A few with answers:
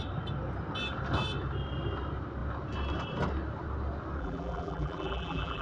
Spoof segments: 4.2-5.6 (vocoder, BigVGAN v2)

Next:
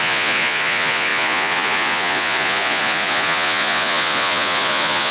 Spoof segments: 0.0-5.1 (vocoder, Vocos)

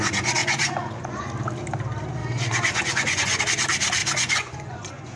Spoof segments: 0.4-1.3 (vocoder, Vocos); 2.2-3.4; 4.0-5.2

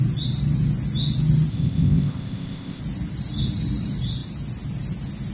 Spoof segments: 1.5-2.8 (codec, ZipCodec)

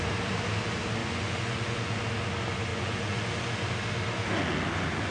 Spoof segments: 1.0-2.0 (vocoder, Vocos); 2.7-3.3

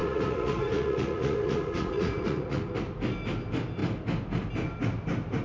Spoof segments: 0.0-2.6 (vocoder, Vocos)